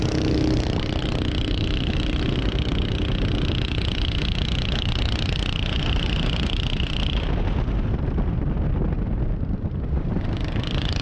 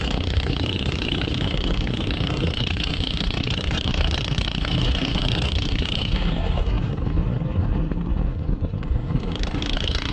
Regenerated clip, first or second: second